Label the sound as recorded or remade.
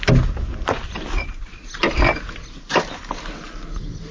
recorded